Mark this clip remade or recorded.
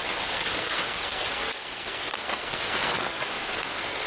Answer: remade